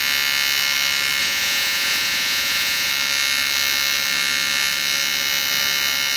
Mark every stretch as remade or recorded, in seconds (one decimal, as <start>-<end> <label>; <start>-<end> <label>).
0.0-1.2 recorded; 1.2-2.9 remade; 2.9-6.2 recorded